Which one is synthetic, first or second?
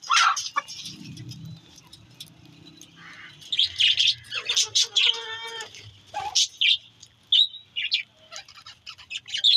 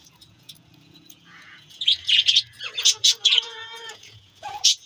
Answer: second